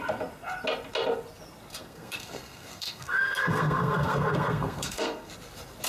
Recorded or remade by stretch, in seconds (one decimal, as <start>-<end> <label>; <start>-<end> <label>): 0.0-1.8 recorded; 1.8-5.3 remade; 5.3-5.9 recorded